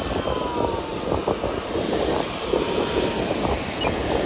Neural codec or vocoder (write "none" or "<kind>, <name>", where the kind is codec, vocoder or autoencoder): none